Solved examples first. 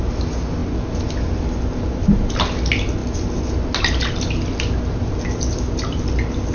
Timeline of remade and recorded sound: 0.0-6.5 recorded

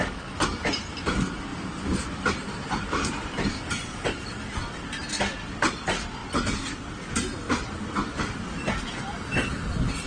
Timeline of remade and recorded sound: 0.0-10.1 recorded

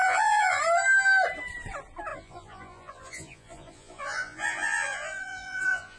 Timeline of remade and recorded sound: 0.0-0.6 remade; 0.6-2.1 recorded; 2.1-6.0 remade